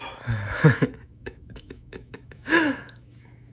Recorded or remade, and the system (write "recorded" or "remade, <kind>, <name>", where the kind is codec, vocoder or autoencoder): remade, autoencoder, DAC-VAE